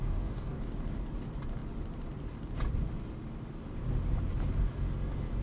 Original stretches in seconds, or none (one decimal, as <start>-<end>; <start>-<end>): 0.6-5.4